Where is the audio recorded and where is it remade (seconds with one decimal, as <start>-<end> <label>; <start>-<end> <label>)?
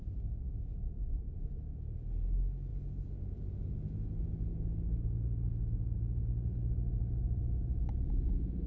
0.0-8.7 recorded